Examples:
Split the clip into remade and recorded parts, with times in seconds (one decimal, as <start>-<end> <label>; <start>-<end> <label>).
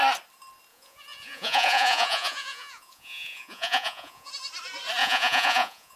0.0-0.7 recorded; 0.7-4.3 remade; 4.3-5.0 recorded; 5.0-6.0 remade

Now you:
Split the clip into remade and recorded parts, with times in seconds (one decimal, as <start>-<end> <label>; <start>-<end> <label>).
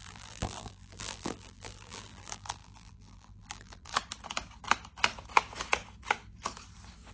0.0-3.9 remade; 3.9-7.1 recorded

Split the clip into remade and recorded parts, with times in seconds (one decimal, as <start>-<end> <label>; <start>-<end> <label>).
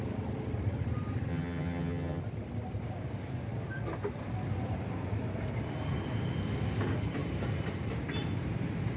0.0-1.3 recorded; 1.3-2.2 remade; 2.2-9.0 recorded